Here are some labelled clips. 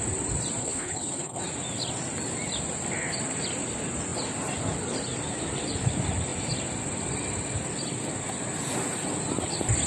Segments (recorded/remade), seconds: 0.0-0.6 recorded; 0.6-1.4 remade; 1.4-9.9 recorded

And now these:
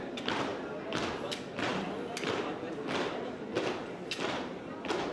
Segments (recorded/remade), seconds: 0.0-5.1 recorded